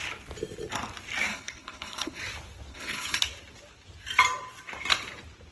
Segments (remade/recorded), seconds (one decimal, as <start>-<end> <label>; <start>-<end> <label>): 0.0-1.3 recorded; 1.3-2.2 remade; 2.2-2.7 recorded; 2.7-3.2 remade; 3.2-5.5 recorded